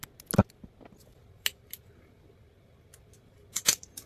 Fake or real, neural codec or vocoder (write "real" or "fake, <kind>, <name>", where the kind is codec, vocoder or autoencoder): real